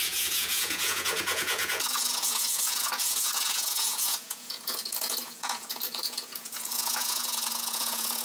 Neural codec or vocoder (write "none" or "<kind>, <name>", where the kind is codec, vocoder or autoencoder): vocoder, Vocos